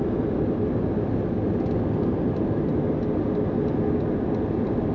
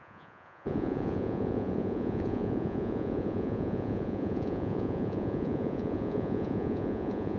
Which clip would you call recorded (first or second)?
first